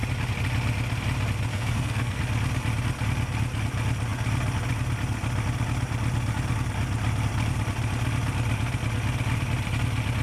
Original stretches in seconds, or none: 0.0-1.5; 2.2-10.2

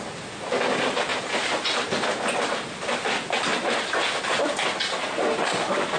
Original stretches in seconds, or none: 0.0-6.0